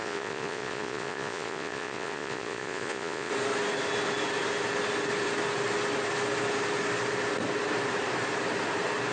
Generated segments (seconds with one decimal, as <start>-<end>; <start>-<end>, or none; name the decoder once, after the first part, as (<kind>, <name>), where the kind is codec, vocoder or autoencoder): 0.0-3.3 (vocoder, Vocos)